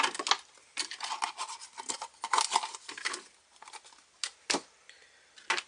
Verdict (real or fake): real